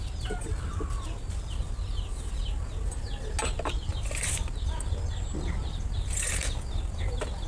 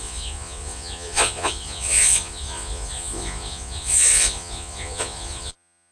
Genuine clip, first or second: first